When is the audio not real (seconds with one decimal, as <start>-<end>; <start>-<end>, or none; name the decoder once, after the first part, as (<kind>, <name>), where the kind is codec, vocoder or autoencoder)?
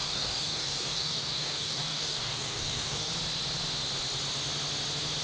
0.0-3.1 (codec, DAC)